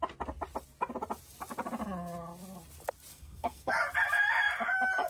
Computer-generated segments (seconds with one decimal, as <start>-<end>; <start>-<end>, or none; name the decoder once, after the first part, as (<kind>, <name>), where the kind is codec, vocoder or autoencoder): 3.1-3.7 (codec, SNAC)